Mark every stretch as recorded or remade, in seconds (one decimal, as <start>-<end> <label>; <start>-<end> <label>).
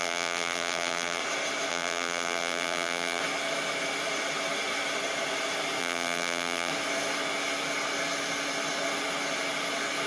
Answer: 0.0-1.2 remade; 1.2-1.7 recorded; 1.7-3.2 remade; 3.2-5.8 recorded; 5.8-6.7 remade; 6.7-10.1 recorded